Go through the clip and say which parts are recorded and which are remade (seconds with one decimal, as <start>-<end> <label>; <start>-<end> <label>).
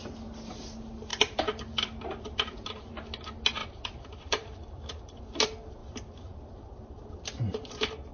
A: 0.0-1.1 recorded; 1.1-2.9 remade; 2.9-3.6 recorded; 3.6-5.2 remade; 5.2-8.1 recorded